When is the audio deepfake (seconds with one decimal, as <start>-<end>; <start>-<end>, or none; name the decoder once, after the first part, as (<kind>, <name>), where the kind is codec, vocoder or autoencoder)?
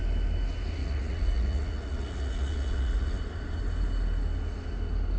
0.8-3.2 (vocoder, Vocos)